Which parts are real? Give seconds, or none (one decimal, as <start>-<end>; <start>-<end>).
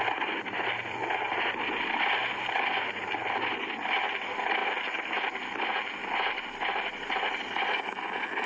0.0-8.5